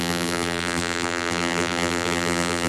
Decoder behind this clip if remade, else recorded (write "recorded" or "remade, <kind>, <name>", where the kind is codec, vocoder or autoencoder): remade, vocoder, BigVGAN v2